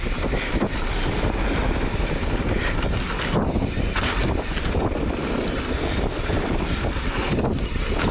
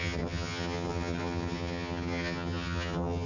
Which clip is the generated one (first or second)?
second